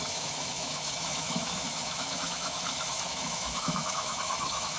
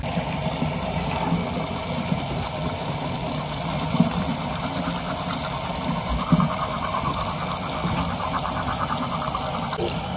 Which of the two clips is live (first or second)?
second